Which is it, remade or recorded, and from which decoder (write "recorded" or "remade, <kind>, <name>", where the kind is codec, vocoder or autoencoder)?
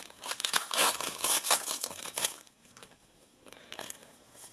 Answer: remade, codec, SNAC